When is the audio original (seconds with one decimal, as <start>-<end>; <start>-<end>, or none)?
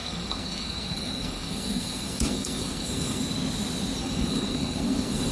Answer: 3.2-4.0